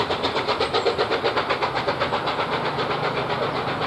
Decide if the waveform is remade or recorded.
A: recorded